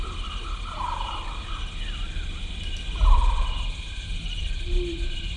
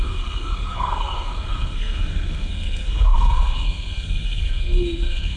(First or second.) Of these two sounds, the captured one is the first